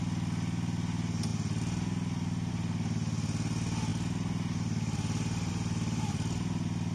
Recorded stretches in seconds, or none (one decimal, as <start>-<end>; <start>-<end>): 0.0-6.9